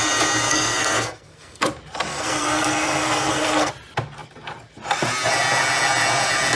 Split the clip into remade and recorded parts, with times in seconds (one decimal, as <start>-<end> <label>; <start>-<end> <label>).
0.0-0.5 recorded; 0.5-1.6 remade; 1.6-2.1 recorded; 2.1-3.7 remade; 3.7-6.5 recorded

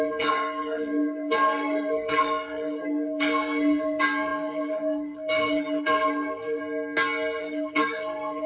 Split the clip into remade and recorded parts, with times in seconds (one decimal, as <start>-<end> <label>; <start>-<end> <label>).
0.0-6.6 remade; 6.6-7.4 recorded; 7.4-8.5 remade

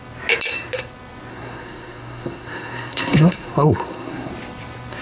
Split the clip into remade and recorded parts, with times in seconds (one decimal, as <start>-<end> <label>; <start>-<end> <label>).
0.0-1.3 recorded; 1.3-4.3 remade; 4.3-5.0 recorded

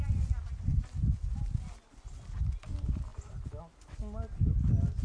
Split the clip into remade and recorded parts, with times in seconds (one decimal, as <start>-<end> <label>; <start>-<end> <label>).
0.0-5.0 recorded

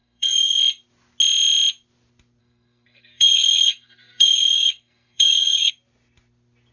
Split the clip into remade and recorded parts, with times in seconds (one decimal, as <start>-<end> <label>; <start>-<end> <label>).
0.0-0.6 remade; 0.6-2.4 recorded; 2.4-5.7 remade; 5.7-6.7 recorded

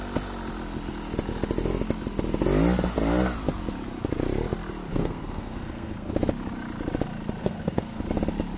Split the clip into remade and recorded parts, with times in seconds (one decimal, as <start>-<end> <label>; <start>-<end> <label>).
0.0-4.9 recorded; 4.9-6.1 remade; 6.1-7.4 recorded; 7.4-8.0 remade; 8.0-8.6 recorded